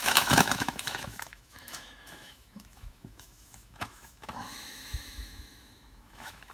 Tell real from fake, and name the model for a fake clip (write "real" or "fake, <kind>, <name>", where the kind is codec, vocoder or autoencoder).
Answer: fake, autoencoder, DAC-VAE